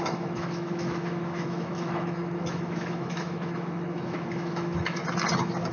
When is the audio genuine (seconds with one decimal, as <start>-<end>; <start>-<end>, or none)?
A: 5.0-5.7